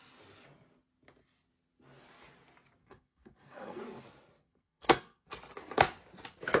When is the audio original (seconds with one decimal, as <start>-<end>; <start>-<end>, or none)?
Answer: 0.0-2.8; 3.8-4.4; 5.3-6.6